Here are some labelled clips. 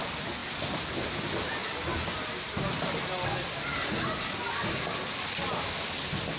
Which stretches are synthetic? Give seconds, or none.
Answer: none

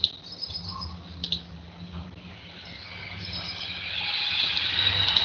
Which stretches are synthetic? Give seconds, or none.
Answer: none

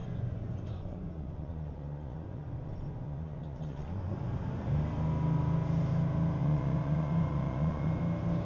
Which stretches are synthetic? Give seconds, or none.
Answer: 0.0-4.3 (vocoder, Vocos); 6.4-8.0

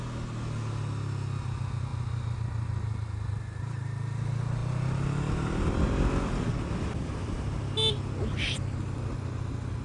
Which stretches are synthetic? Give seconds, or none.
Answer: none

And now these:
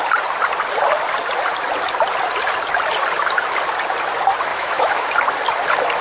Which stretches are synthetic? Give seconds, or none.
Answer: 4.5-5.1 (autoencoder, DAC-VAE)

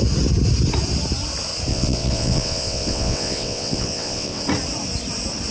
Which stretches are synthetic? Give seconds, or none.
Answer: 1.7-4.4 (vocoder, WaveNeXt)